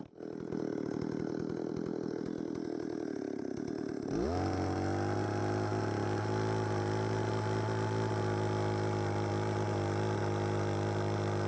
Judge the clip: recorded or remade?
recorded